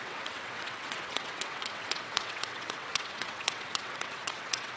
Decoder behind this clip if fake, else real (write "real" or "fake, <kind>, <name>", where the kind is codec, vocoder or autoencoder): fake, vocoder, WaveNeXt